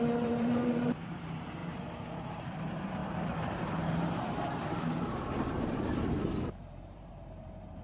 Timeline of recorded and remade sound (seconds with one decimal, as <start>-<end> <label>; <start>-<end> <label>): 0.0-7.8 remade